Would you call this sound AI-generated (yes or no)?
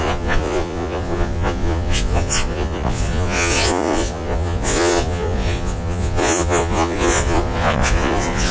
yes